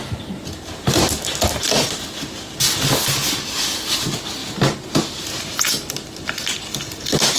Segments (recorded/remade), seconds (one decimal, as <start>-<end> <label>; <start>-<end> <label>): 0.0-7.4 recorded